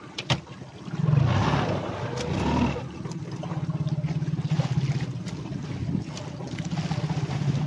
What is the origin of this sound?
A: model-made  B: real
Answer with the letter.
B